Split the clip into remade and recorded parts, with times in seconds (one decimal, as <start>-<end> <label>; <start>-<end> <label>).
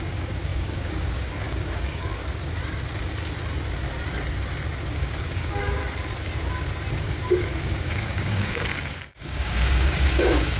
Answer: 0.0-2.2 remade; 2.2-4.9 recorded; 4.9-5.8 remade; 5.8-6.9 recorded; 6.9-10.6 remade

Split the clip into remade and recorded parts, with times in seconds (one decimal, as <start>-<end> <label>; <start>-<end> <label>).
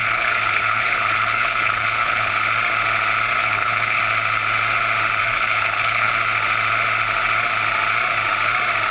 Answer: 0.0-2.3 remade; 2.3-3.4 recorded; 3.4-4.0 remade; 4.0-5.2 recorded; 5.2-6.1 remade; 6.1-8.9 recorded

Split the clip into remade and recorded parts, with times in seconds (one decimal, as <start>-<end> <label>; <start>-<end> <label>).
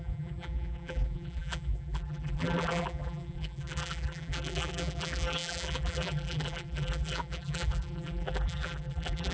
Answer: 0.0-9.3 remade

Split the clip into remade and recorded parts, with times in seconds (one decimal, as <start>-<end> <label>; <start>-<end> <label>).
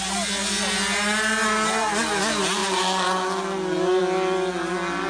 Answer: 0.0-5.1 recorded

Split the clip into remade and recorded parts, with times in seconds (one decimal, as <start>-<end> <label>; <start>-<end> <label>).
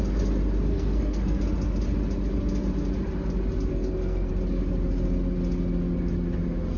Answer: 0.0-0.7 recorded; 0.7-1.4 remade; 1.4-3.7 recorded; 3.7-4.3 remade; 4.3-6.8 recorded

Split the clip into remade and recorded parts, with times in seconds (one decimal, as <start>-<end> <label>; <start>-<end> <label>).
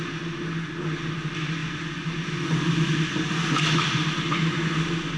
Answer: 0.0-5.2 recorded